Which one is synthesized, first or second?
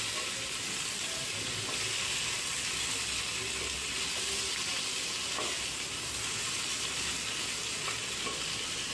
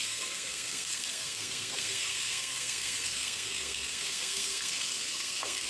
second